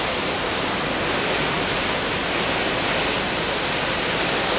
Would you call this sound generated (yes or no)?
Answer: yes